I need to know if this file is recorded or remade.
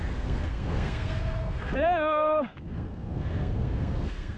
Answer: remade